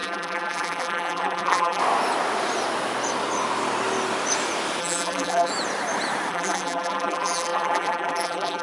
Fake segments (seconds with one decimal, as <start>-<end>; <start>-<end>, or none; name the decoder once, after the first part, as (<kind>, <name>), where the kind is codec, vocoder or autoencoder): 0.0-1.8 (vocoder, BigVGAN v2); 4.8-5.5; 6.3-8.6